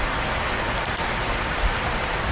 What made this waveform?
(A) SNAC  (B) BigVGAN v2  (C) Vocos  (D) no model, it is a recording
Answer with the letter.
B